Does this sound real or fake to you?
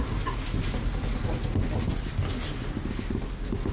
real